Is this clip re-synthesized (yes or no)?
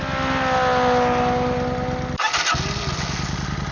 no